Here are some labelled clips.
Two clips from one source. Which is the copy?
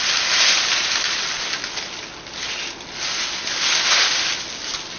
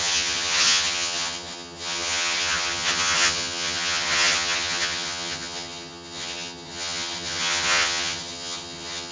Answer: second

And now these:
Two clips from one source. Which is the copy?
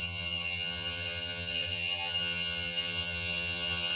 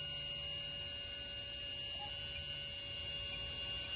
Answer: first